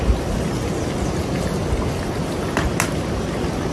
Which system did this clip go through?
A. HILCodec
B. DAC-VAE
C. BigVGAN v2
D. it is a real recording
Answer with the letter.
D